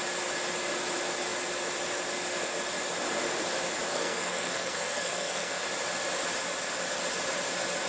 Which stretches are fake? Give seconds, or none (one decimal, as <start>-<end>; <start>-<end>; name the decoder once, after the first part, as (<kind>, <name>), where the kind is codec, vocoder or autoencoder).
3.9-5.6 (codec, SNAC)